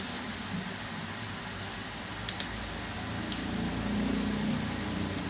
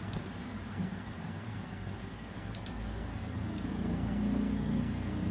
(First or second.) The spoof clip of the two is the second